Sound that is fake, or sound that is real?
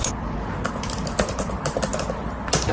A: real